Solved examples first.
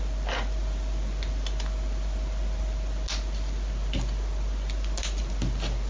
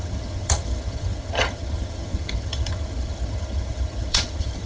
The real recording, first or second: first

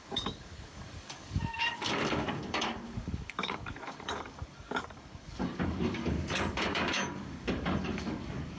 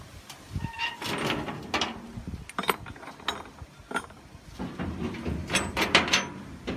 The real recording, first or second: second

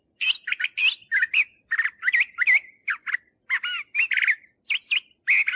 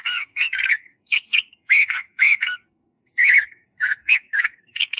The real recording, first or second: first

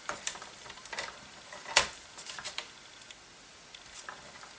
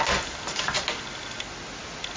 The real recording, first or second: second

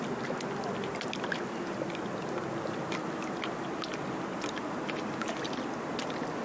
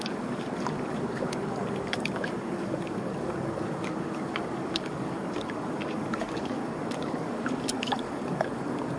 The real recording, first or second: first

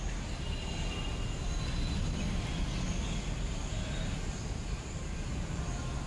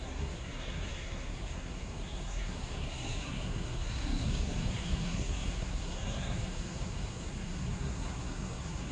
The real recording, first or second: first